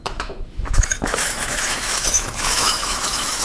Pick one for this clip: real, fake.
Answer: fake